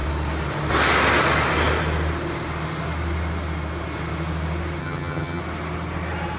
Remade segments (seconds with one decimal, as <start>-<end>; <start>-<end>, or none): 4.8-5.4